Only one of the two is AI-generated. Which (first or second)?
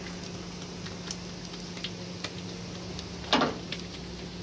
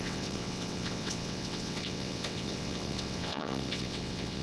second